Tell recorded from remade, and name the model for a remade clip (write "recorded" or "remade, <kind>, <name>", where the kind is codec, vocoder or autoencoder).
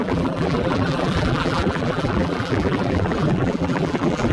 remade, vocoder, BigVGAN v2